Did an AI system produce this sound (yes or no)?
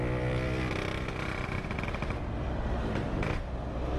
no